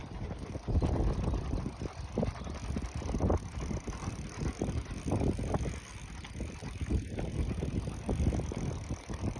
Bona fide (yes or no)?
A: yes